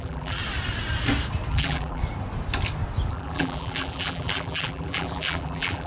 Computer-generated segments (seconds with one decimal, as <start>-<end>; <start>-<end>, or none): 0.0-0.4; 1.5-2.0; 3.1-5.9